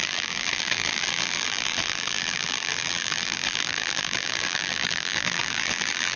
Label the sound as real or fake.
fake